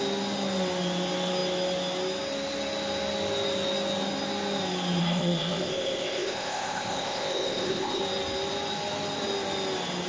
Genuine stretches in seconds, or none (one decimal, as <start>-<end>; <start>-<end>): 0.0-5.0; 8.0-10.1